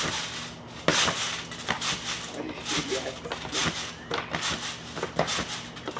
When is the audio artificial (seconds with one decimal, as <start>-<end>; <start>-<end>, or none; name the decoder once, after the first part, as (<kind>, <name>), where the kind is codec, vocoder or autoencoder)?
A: none

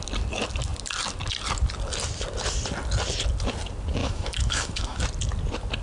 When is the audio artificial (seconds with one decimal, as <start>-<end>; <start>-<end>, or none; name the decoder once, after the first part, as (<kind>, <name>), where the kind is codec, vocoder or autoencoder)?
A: 4.0-5.0 (autoencoder, DAC-VAE)

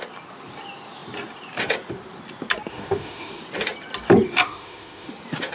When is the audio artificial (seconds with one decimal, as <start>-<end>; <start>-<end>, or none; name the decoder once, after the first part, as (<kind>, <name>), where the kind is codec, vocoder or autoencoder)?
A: 2.7-3.3 (autoencoder, DAC-VAE); 4.4-5.1

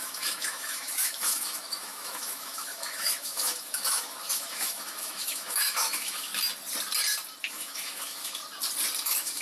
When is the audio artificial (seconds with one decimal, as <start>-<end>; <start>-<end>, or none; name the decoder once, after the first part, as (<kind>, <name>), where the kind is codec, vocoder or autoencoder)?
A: 0.0-6.3 (autoencoder, DAC-VAE); 7.5-8.4; 9.0-9.4

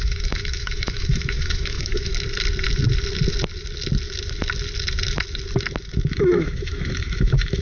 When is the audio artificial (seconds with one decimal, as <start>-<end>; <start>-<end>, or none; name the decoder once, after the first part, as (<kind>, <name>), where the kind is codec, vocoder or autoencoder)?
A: 0.0-2.1 (autoencoder, DAC-VAE); 5.8-7.6

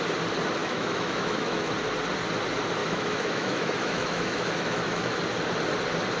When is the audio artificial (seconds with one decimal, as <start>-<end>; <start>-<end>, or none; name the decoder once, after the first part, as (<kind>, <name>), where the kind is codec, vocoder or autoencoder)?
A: 0.6-1.7 (autoencoder, DAC-VAE); 2.8-5.2

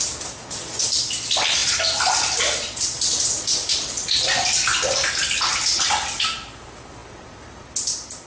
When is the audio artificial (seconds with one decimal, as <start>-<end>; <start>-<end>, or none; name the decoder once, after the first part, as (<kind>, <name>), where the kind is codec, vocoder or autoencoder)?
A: none

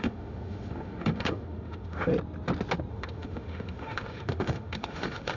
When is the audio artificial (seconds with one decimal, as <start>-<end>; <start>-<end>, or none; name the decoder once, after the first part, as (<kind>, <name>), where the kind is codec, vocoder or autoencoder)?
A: 0.0-2.1 (autoencoder, DAC-VAE); 2.9-5.4